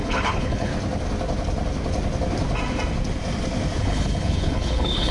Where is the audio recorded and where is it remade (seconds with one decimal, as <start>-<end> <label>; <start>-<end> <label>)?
0.0-0.7 remade; 0.7-3.8 recorded; 3.8-5.1 remade